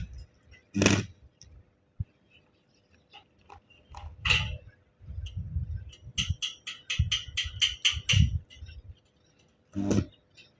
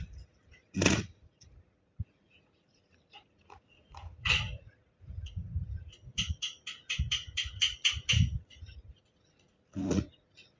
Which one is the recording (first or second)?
first